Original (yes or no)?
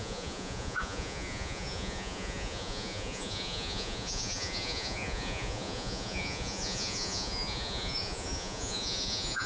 no